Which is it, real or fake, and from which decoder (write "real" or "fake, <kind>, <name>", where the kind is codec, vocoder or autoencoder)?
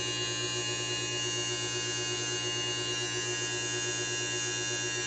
real